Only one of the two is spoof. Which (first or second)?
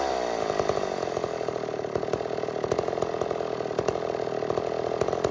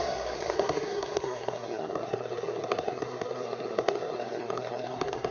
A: second